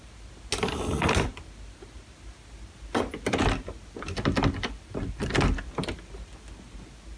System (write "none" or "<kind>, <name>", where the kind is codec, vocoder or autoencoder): none